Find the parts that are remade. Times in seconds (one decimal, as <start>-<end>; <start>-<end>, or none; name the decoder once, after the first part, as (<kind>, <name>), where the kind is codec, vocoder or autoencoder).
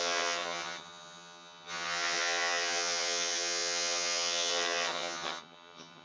0.0-6.0 (vocoder, HiFi-GAN)